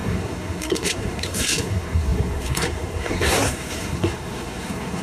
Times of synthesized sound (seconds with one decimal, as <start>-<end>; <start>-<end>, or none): 0.0-5.0